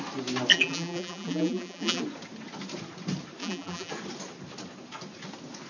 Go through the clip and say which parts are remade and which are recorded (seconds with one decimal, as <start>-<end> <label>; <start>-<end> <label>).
0.0-0.5 recorded; 0.5-2.0 remade; 2.0-3.4 recorded; 3.4-3.9 remade; 3.9-5.7 recorded